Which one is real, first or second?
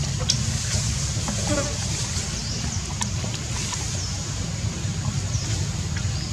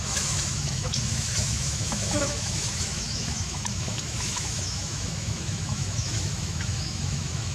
first